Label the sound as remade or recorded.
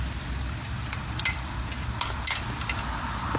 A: recorded